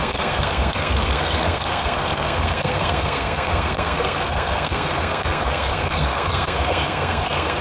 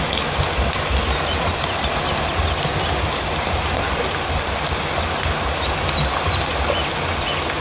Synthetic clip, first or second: first